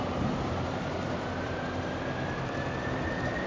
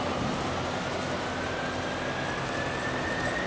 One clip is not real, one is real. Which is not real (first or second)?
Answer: first